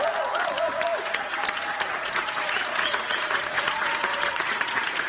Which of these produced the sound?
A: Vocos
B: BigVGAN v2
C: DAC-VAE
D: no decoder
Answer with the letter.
A